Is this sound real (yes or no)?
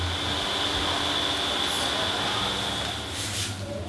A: yes